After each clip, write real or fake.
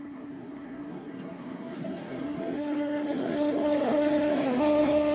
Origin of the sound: fake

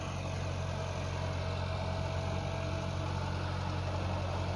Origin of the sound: real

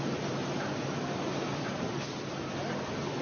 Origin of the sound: real